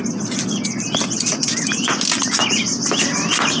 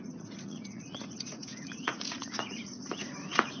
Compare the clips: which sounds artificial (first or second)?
second